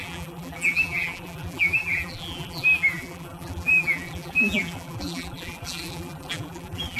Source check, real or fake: fake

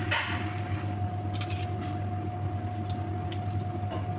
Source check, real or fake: real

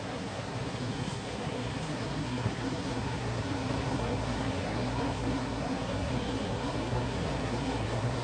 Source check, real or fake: fake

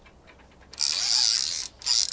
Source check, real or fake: real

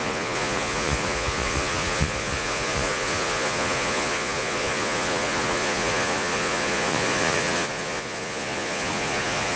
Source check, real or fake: fake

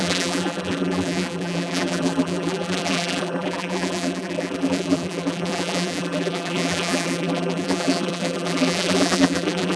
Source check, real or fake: fake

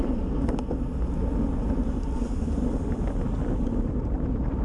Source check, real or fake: real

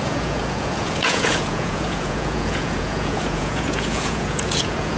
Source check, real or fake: fake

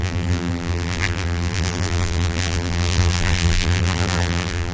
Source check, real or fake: fake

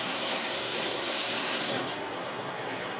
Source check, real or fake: fake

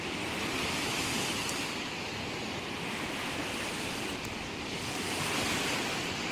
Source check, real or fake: real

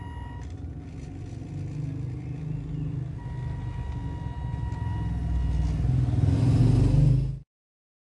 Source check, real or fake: real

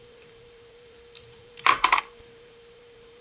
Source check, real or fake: fake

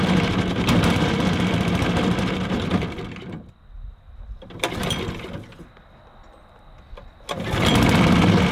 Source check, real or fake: real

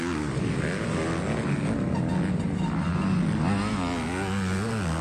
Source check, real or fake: real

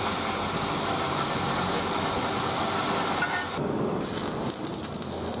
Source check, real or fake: real